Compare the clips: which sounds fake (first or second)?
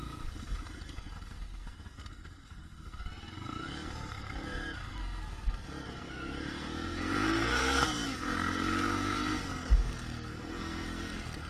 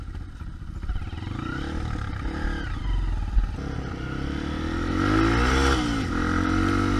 first